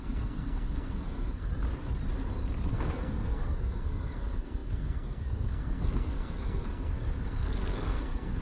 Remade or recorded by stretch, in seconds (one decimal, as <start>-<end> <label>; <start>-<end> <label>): 0.0-1.5 remade; 1.5-2.7 recorded; 2.7-8.4 remade